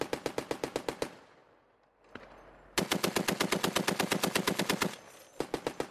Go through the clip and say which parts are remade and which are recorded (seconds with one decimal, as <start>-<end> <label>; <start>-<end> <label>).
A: 0.0-5.9 recorded